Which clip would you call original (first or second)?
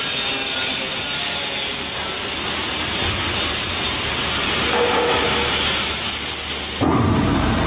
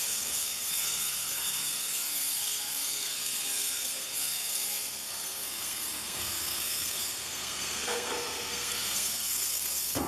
first